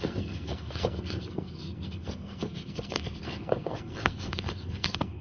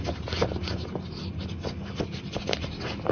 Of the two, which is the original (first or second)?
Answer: second